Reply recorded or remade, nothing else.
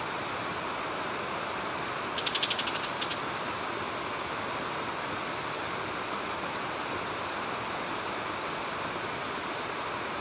recorded